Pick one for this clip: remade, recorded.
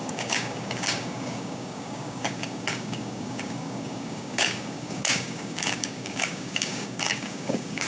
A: remade